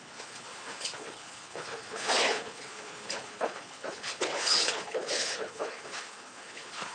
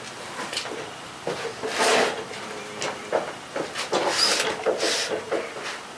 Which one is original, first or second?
second